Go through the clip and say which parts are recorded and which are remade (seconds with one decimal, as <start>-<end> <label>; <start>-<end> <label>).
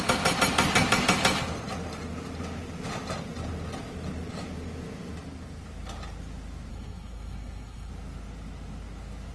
0.0-6.7 recorded; 6.7-7.9 remade; 7.9-9.3 recorded